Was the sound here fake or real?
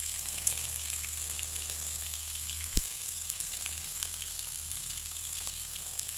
fake